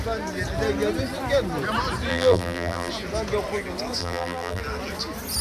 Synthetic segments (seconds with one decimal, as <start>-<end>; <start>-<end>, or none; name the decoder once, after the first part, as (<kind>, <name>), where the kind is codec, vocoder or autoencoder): 2.1-2.9 (vocoder, BigVGAN v2); 4.0-4.6